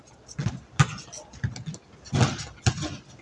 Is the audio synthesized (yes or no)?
no